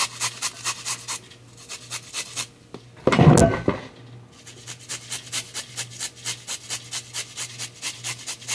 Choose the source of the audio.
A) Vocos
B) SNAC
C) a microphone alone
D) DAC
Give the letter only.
C